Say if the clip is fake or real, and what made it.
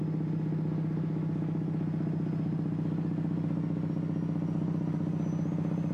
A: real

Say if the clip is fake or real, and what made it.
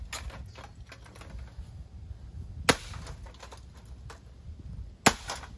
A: real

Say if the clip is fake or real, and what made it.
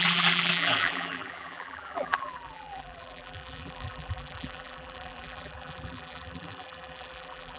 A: fake, vocoder, BigVGAN v2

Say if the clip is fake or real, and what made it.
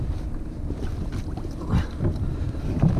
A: fake, vocoder, BigVGAN v2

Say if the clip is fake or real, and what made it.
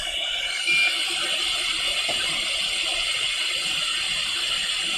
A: real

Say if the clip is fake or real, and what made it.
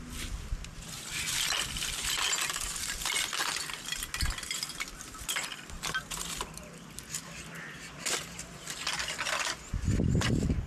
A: real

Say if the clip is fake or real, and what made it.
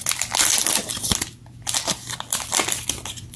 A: real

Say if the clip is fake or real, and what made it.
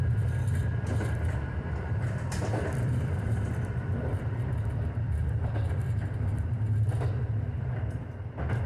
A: fake, vocoder, BigVGAN v2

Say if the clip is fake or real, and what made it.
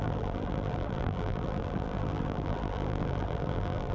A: fake, vocoder, BigVGAN v2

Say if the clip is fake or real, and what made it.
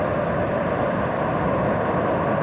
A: real